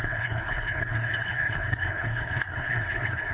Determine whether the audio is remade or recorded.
remade